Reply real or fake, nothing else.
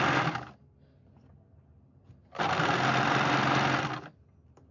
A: real